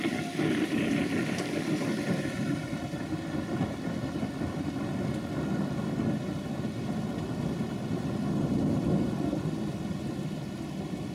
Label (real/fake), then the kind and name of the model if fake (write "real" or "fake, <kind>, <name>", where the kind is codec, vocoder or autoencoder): real